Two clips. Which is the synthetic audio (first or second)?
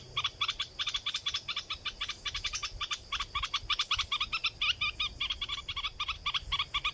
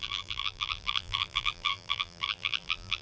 second